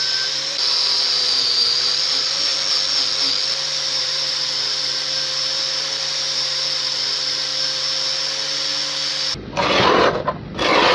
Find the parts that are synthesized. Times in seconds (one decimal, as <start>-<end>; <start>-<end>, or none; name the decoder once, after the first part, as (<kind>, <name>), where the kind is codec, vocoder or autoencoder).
0.0-2.5 (vocoder, BigVGAN v2); 3.5-7.5; 9.1-10.9